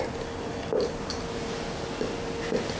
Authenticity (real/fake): real